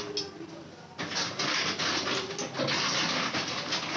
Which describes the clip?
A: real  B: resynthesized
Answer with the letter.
A